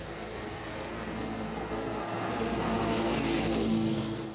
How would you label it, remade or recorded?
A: remade